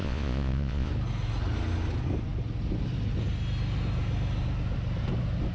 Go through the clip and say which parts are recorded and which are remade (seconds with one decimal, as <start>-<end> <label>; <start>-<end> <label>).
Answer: 0.0-0.9 remade; 0.9-5.5 recorded